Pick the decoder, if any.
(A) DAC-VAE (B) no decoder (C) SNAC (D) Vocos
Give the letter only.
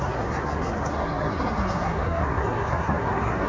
C